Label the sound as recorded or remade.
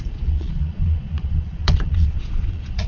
remade